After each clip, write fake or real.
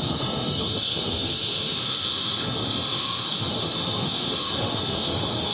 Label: fake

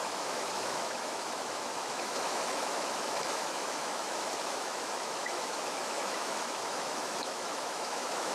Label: fake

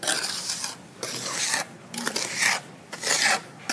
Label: real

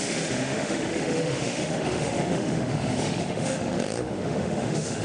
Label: fake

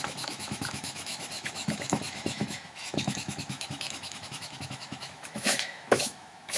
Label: fake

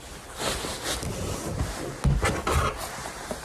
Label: real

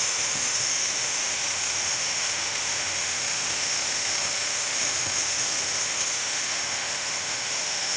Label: fake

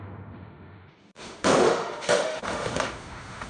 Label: fake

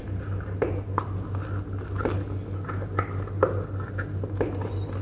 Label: real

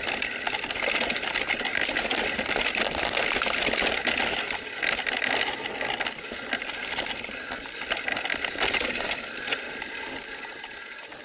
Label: real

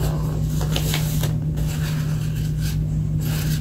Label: real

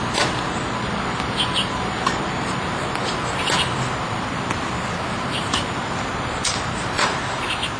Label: real